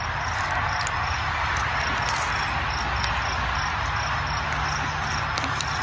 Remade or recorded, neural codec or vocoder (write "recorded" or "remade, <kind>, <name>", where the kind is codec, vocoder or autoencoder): recorded